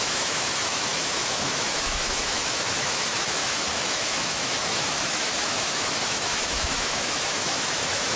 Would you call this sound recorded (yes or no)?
no